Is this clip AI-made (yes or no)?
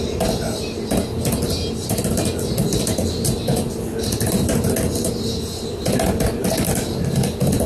no